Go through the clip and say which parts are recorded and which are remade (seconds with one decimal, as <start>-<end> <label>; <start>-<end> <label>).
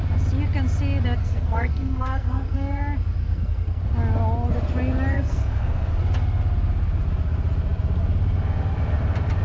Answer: 0.0-1.2 recorded; 1.2-2.8 remade; 2.8-3.2 recorded; 3.2-3.8 remade; 3.8-5.1 recorded; 5.1-5.9 remade; 5.9-9.4 recorded